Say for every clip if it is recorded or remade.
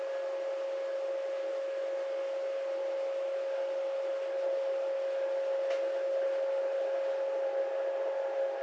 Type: recorded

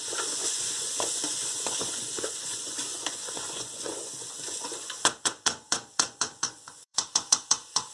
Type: remade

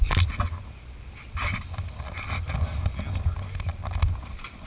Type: recorded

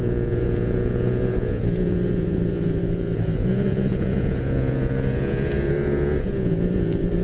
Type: remade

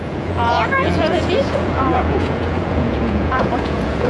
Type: remade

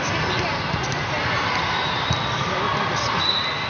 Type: recorded